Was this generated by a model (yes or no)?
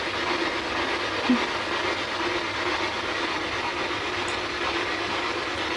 no